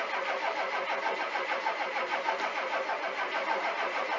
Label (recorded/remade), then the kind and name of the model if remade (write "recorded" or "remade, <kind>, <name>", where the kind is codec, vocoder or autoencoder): recorded